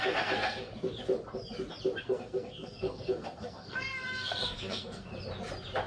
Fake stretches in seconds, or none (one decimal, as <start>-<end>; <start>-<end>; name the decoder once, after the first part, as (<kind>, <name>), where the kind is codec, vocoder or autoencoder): 0.0-0.7 (codec, SNAC); 2.0-5.1

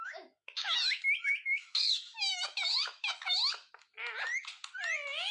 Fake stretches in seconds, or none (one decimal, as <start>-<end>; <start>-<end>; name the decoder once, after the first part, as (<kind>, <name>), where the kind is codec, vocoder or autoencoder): 0.0-3.9 (autoencoder, DAC-VAE)

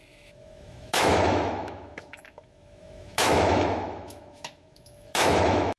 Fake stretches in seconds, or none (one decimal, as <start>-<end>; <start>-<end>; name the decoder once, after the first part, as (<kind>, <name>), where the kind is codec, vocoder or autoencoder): 0.0-5.8 (autoencoder, DAC-VAE)

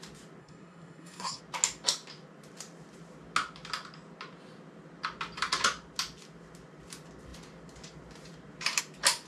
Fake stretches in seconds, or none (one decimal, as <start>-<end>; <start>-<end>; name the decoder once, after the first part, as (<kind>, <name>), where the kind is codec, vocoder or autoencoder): 0.4-1.4 (codec, SNAC)